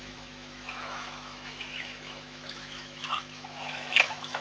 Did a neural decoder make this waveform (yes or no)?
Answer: yes